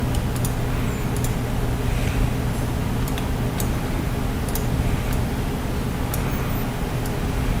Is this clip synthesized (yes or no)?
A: no